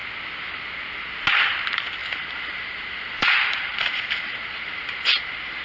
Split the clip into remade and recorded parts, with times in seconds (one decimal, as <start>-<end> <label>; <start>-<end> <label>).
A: 0.0-2.0 recorded; 2.0-5.6 remade